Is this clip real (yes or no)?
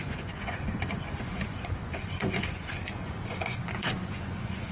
no